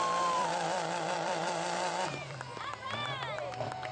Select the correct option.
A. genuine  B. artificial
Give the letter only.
B